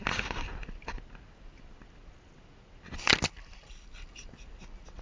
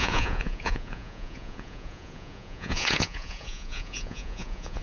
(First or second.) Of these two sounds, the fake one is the second